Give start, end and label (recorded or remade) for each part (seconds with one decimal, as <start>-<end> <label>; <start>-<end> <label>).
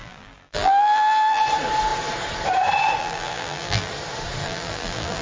0.0-1.4 remade; 1.4-3.0 recorded; 3.0-3.9 remade; 3.9-4.4 recorded; 4.4-5.2 remade